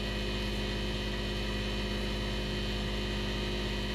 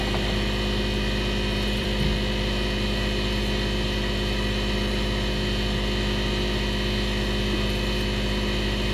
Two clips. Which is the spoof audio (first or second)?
second